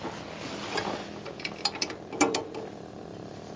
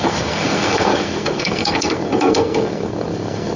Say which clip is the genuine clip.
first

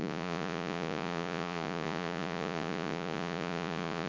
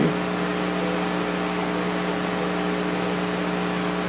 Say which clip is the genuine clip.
second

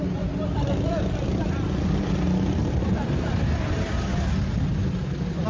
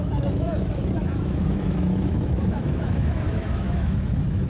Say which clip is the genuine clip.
first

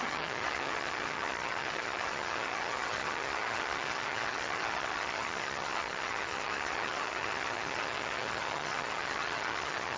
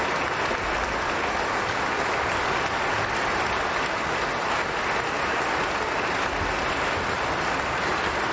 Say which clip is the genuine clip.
second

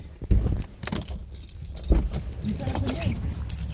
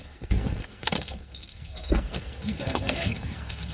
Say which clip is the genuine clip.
first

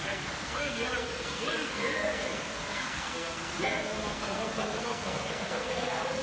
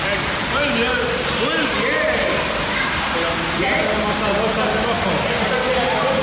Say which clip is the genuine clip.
second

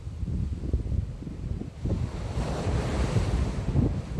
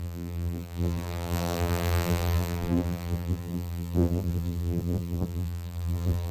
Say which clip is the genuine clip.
first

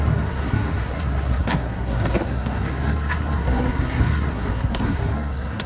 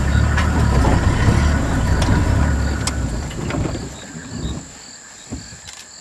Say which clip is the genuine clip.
second